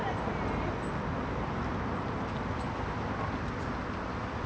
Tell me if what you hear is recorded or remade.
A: recorded